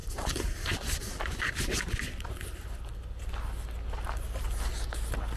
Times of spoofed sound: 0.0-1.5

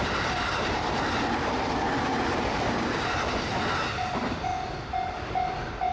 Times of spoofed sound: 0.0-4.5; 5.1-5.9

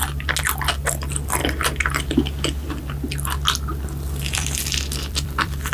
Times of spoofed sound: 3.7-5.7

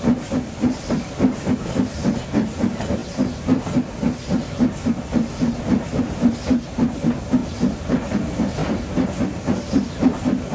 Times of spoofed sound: 8.6-9.2

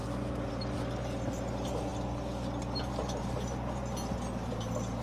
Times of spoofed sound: none